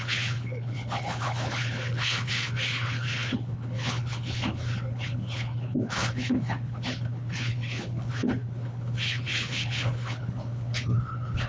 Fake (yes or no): yes